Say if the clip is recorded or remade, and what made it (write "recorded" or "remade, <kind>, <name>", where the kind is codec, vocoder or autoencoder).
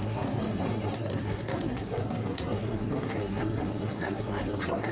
remade, codec, SNAC